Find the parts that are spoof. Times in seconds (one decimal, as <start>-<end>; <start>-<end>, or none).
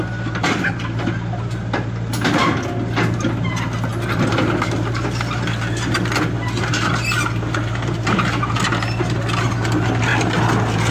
none